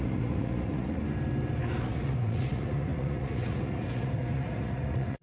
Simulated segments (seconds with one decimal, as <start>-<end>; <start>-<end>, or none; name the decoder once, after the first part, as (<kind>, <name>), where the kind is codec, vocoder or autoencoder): 0.0-1.0 (vocoder, Vocos); 1.8-5.2